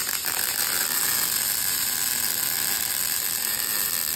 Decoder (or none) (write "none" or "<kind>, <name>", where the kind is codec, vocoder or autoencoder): vocoder, BigVGAN v2